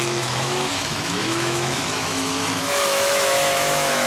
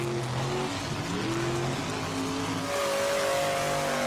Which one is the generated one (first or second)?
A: first